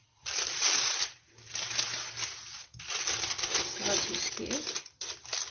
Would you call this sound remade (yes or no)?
no